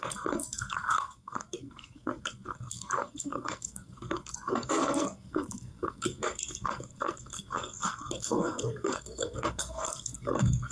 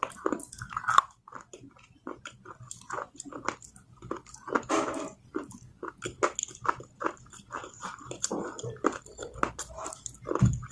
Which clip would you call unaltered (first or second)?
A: second